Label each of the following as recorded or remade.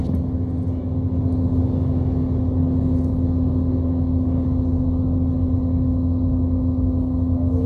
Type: recorded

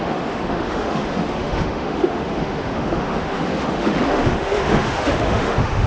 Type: remade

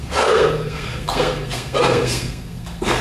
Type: remade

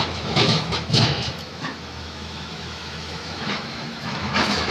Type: remade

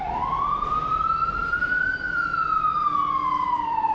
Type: recorded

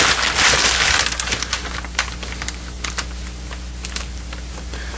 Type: recorded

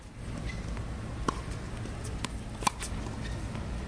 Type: recorded